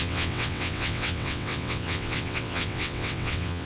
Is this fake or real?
fake